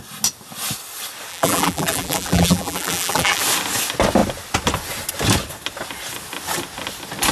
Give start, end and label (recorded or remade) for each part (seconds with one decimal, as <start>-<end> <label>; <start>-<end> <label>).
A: 0.0-1.3 recorded; 1.3-3.4 remade; 3.4-7.3 recorded